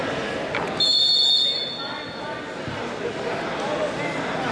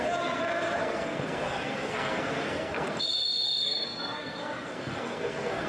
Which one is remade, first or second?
second